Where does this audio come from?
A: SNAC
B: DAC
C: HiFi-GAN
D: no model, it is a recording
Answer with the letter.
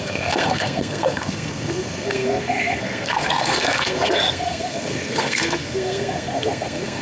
A